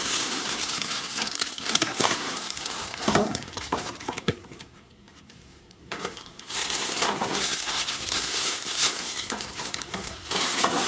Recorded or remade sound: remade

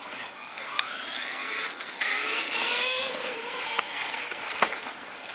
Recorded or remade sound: remade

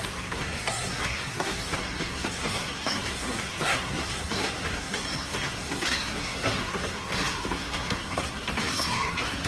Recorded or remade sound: remade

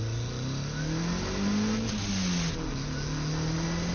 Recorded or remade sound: recorded